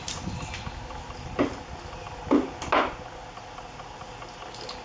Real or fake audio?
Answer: real